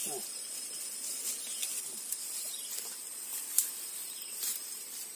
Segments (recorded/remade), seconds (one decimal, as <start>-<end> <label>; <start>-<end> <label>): 0.0-5.2 recorded